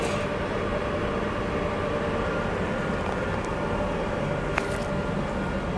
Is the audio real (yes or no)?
yes